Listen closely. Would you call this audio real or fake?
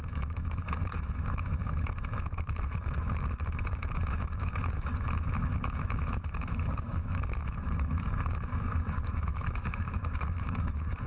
fake